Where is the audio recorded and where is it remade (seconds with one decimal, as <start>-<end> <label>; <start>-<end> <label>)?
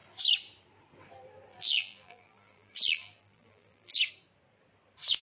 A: 0.0-1.5 recorded; 1.5-4.0 remade; 4.0-5.3 recorded